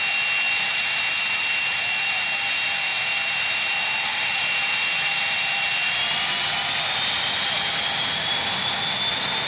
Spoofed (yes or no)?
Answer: no